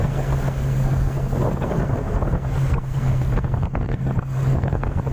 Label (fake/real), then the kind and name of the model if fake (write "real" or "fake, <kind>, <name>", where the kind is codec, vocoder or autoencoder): fake, codec, SNAC